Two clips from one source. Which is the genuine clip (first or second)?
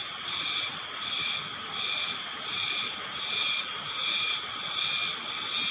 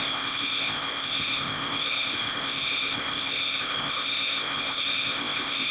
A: first